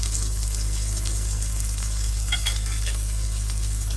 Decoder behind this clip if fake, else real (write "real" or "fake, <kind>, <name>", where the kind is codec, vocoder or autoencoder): fake, codec, SNAC